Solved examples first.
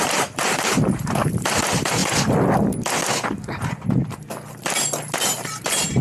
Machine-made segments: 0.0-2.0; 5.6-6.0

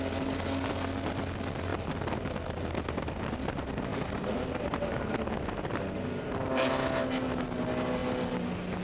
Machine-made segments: 1.7-3.2; 3.9-5.8

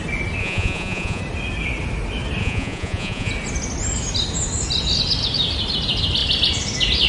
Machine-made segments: 0.4-1.2; 2.4-3.3

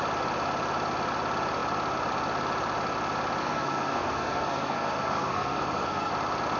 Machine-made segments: 3.4-6.1

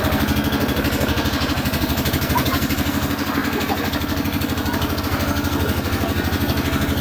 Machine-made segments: 0.0-7.0